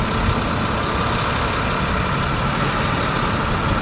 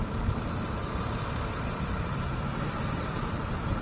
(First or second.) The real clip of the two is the first